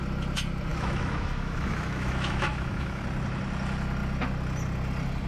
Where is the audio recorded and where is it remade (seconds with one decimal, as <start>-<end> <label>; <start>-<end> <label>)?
0.0-0.7 recorded; 0.7-3.0 remade; 3.0-5.3 recorded